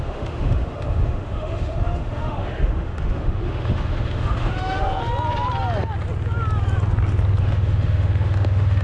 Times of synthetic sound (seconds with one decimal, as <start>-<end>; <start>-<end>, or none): 0.0-5.1; 7.4-8.8